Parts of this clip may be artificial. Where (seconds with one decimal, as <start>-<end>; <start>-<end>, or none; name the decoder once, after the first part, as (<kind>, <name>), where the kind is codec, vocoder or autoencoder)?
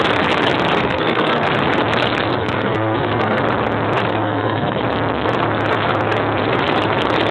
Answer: 0.8-1.5 (codec, SNAC); 2.3-3.4; 4.1-4.8